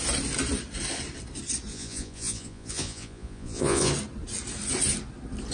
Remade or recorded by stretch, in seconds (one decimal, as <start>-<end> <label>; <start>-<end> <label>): 0.0-1.7 recorded; 1.7-3.9 remade; 3.9-5.5 recorded